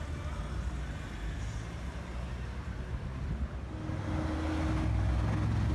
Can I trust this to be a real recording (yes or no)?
yes